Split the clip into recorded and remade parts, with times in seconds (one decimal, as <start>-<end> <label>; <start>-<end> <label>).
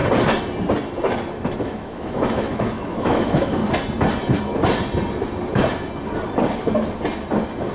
0.0-1.6 recorded; 1.6-3.6 remade; 3.6-7.7 recorded